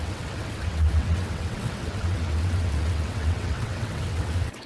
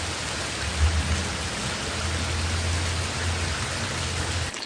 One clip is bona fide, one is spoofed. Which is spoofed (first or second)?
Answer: first